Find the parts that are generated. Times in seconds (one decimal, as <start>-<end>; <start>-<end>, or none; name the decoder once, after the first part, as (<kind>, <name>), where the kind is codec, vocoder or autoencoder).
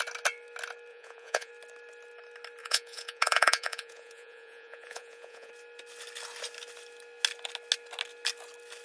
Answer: 0.9-1.5 (vocoder, Vocos); 2.6-5.5